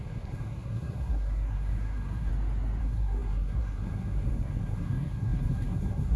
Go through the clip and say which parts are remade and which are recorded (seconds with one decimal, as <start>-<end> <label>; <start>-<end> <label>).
0.0-2.3 remade; 2.3-2.8 recorded; 2.8-6.2 remade